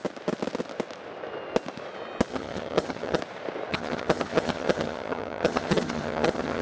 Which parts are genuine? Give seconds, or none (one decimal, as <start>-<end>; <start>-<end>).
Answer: 0.0-2.3; 3.2-3.7